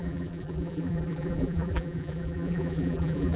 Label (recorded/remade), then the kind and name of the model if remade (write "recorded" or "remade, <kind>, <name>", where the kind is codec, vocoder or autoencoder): remade, vocoder, BigVGAN v2